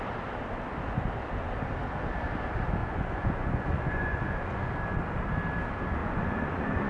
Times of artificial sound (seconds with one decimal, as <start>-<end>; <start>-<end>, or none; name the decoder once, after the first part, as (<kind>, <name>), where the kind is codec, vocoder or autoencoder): 2.8-4.7 (vocoder, Vocos); 6.0-6.9